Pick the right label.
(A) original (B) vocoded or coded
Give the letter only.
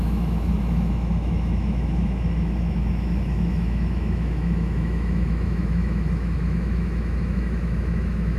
B